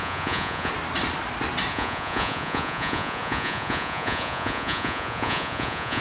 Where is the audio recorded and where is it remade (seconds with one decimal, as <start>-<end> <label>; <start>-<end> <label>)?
0.0-0.7 remade; 0.7-1.7 recorded; 1.7-6.0 remade